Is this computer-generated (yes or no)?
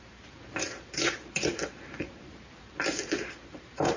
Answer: yes